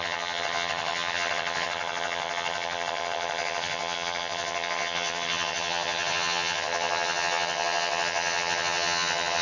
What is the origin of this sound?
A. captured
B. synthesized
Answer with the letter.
B